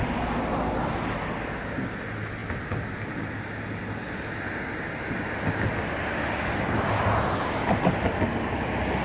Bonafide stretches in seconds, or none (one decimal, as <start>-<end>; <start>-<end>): 0.0-9.0